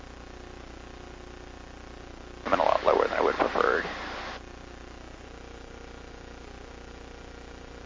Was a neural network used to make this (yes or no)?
no